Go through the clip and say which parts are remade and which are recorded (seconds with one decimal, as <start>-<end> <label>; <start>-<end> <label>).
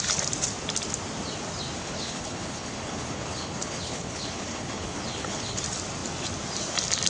0.0-1.8 recorded; 1.8-5.6 remade; 5.6-7.1 recorded